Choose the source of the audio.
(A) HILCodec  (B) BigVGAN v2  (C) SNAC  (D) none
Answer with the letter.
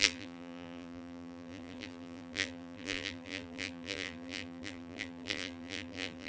B